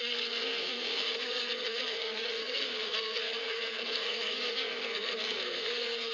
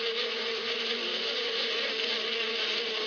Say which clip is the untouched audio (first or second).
second